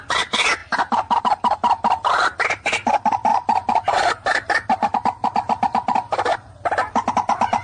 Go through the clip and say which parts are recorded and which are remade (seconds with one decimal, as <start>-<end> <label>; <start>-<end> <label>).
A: 0.0-7.6 recorded